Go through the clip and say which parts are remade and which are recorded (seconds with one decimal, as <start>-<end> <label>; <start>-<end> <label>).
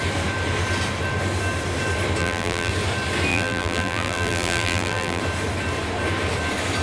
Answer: 0.0-2.2 recorded; 2.2-2.7 remade; 2.7-3.3 recorded; 3.3-5.2 remade; 5.2-6.8 recorded